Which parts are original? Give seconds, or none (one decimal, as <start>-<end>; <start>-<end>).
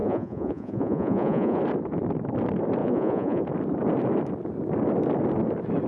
1.6-2.8; 3.4-5.9